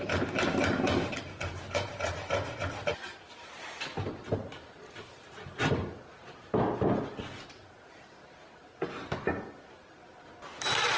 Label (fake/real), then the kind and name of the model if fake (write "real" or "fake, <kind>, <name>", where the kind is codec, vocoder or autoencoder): real